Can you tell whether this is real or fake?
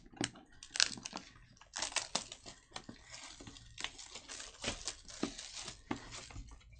real